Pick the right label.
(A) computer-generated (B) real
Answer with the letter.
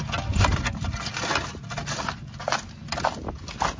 B